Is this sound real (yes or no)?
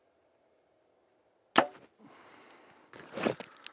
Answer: yes